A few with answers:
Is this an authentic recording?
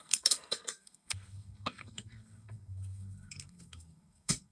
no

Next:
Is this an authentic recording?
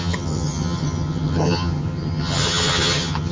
no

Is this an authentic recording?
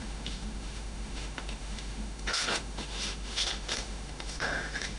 no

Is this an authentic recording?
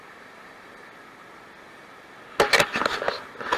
yes